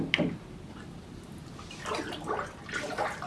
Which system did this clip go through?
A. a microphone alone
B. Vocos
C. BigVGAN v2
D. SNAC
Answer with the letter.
A